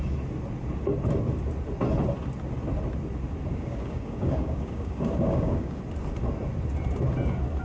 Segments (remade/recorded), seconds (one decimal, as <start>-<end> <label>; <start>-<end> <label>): 0.0-3.5 recorded; 3.5-5.8 remade; 5.8-7.6 recorded